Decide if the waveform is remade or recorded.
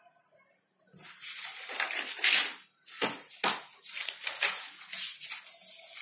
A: recorded